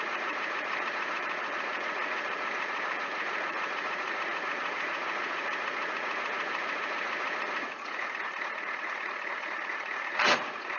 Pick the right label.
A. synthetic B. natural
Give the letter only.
A